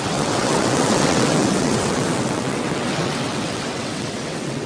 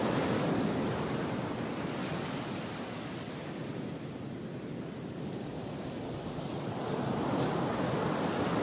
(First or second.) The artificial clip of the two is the first